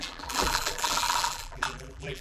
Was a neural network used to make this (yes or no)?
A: yes